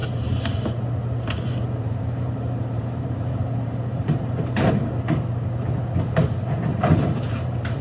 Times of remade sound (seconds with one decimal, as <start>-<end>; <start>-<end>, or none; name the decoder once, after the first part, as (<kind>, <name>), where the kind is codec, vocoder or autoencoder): 0.0-4.7 (vocoder, BigVGAN v2); 6.7-7.8